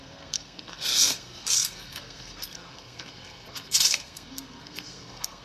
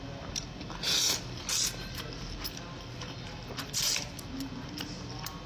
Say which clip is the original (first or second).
second